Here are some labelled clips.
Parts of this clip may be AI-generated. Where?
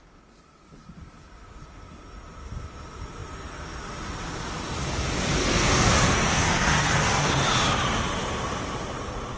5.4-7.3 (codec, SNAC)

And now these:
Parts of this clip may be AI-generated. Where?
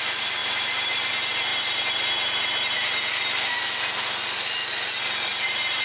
none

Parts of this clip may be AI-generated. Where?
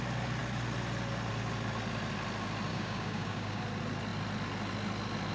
2.7-3.6 (codec, DAC)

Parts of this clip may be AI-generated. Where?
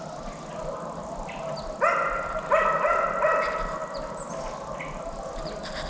none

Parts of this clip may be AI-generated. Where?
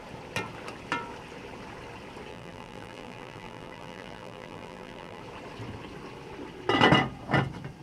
2.3-5.2 (vocoder, BigVGAN v2)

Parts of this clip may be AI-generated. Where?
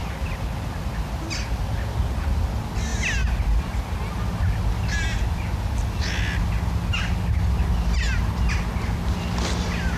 none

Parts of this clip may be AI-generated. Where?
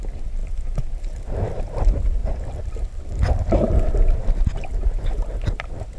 2.2-4.4 (vocoder, BigVGAN v2)